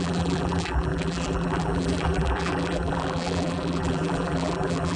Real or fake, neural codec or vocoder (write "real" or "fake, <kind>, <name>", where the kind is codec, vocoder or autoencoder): fake, vocoder, BigVGAN v2